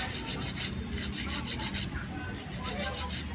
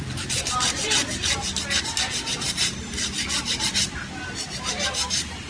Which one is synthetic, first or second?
second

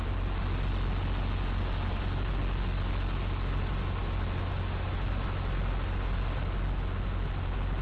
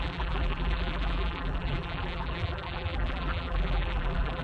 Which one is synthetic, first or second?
second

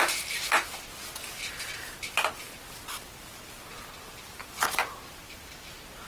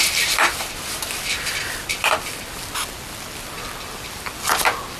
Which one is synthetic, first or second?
second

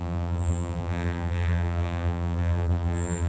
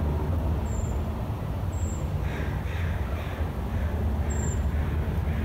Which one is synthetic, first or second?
first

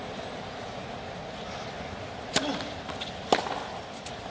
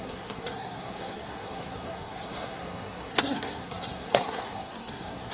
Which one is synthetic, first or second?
second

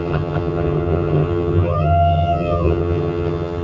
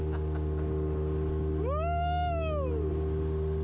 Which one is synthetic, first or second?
first